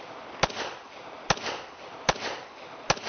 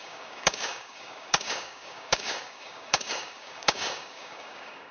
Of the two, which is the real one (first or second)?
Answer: first